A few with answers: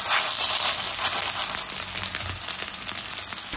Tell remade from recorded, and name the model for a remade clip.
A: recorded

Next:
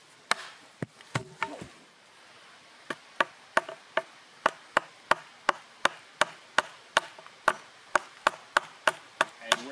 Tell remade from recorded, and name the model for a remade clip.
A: recorded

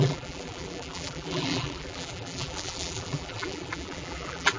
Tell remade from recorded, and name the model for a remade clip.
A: remade, vocoder, BigVGAN v2